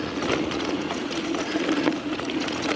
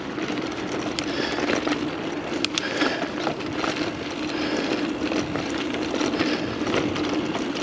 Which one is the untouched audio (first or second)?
second